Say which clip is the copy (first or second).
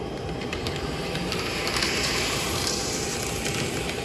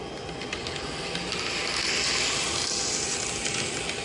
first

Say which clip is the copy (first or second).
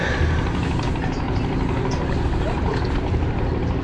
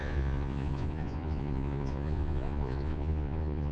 second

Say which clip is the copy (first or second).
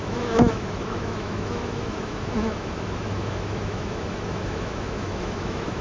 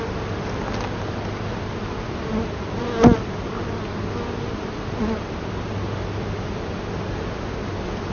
first